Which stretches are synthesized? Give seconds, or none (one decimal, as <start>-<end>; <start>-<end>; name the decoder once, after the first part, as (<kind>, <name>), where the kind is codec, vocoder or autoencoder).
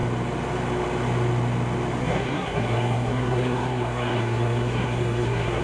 2.0-5.6 (codec, SNAC)